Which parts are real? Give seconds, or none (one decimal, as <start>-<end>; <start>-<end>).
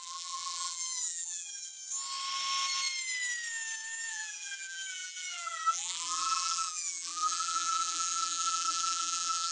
1.7-4.1